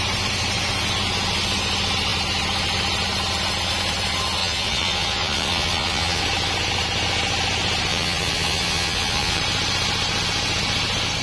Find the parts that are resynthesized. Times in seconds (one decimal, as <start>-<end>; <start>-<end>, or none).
4.4-6.2; 7.9-9.4

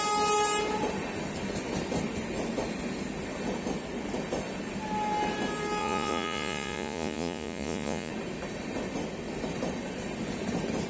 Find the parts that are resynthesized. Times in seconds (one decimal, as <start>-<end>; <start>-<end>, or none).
5.8-8.1

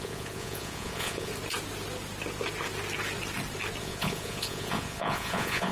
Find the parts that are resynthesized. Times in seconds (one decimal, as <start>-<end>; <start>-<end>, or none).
0.0-1.3; 3.8-5.7

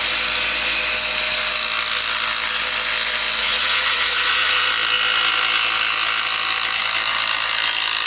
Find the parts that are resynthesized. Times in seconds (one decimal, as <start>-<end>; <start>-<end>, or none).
3.4-4.7

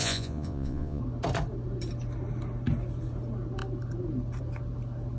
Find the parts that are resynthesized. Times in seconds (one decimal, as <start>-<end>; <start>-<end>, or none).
0.0-1.0